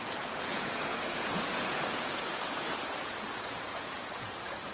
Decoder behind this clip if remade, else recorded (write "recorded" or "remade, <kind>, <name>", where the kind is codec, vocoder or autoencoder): remade, vocoder, Vocos